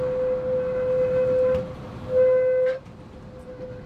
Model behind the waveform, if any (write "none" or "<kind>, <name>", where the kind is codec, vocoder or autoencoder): none